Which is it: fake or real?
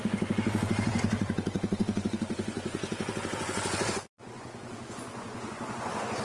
fake